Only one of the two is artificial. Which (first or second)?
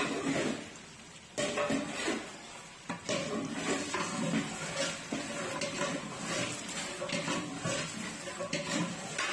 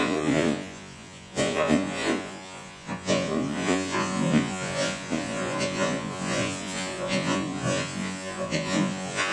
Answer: second